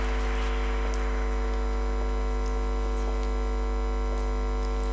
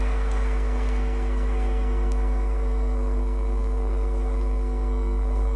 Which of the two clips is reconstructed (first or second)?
second